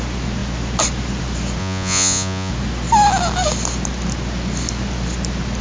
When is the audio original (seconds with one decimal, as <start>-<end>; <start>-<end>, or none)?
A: 0.0-1.6; 2.5-5.6